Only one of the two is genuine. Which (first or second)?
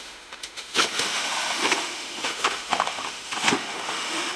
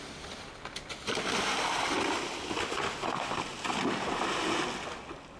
second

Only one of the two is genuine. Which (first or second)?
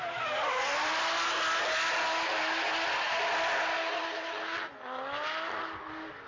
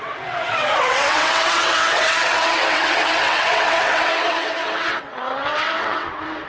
first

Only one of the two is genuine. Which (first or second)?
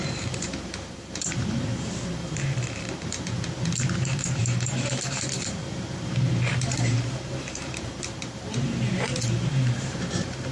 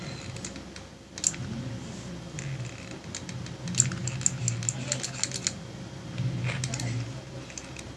second